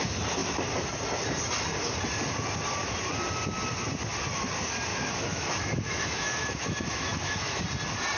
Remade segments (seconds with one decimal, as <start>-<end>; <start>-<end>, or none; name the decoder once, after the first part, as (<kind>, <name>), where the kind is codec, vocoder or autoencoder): 4.9-7.6 (autoencoder, DAC-VAE)